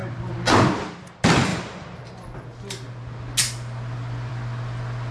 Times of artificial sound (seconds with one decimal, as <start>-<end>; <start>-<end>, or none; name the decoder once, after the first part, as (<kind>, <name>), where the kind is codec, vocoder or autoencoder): none